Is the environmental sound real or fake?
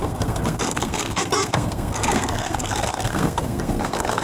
fake